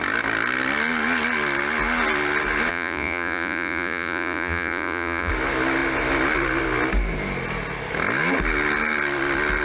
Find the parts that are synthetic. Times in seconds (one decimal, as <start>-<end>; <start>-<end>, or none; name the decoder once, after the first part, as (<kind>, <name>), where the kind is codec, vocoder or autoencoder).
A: 2.7-5.3 (vocoder, Vocos)